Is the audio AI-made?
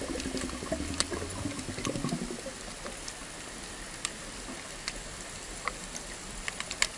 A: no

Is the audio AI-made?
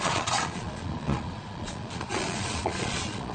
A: yes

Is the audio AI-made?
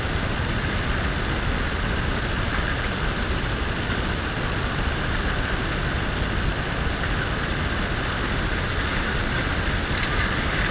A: no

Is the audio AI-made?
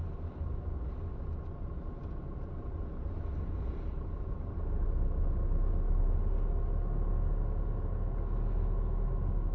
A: no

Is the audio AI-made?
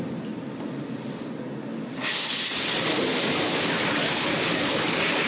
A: no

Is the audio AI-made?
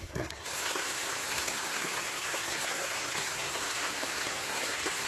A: yes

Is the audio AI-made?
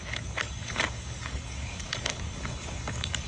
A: yes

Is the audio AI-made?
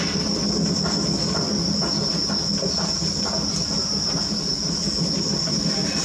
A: no